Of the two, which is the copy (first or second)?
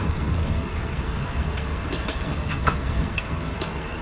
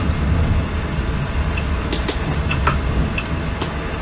first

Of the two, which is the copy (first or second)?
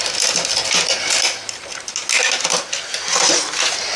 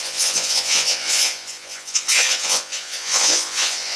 second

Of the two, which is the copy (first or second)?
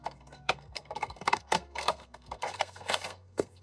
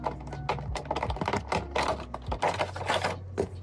first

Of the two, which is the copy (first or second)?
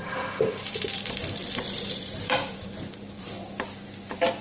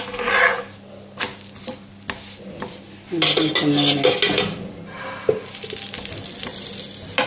first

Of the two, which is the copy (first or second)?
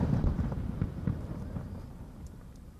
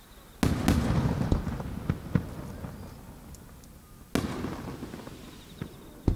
first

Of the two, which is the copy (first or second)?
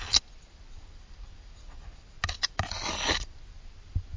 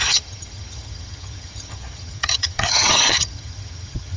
second